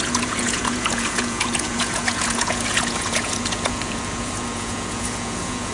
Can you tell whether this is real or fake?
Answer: fake